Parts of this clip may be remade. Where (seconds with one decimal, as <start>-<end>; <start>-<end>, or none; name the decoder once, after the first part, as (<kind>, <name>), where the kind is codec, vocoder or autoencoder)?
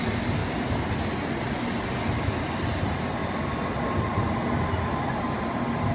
3.2-5.9 (vocoder, BigVGAN v2)